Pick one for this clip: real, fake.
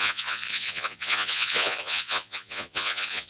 fake